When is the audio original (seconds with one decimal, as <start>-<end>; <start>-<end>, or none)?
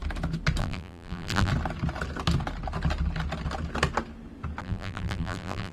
0.0-0.6; 1.5-4.6